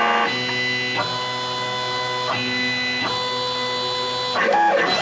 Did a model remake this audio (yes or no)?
no